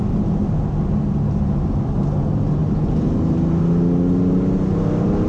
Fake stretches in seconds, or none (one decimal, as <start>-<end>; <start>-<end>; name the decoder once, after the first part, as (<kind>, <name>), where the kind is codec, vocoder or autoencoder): none